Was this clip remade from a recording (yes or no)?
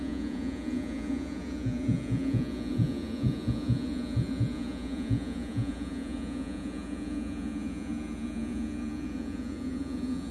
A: yes